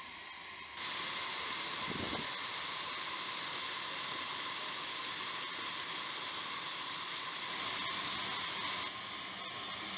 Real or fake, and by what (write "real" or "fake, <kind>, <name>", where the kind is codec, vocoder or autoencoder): real